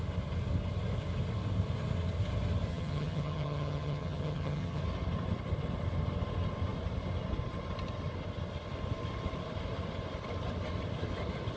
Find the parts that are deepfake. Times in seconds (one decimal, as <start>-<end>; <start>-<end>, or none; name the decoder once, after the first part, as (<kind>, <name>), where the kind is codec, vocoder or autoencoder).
2.7-4.8 (vocoder, HiFi-GAN)